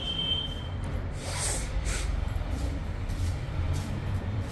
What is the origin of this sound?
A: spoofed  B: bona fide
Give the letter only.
A